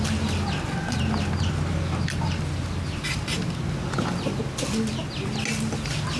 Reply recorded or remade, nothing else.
recorded